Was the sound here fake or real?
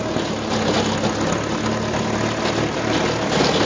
real